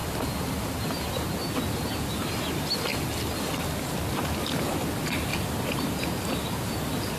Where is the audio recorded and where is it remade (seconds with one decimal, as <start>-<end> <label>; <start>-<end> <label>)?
0.0-7.2 recorded